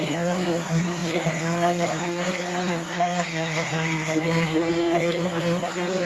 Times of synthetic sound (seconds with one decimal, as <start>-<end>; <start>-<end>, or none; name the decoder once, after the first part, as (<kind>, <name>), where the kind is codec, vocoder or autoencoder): 0.0-6.1 (codec, SNAC)